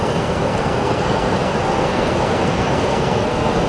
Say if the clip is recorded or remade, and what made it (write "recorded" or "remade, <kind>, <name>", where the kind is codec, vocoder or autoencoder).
remade, codec, SNAC